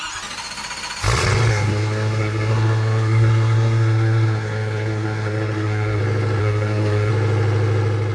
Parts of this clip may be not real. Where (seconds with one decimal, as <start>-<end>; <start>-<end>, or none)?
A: 1.5-6.0; 6.4-7.1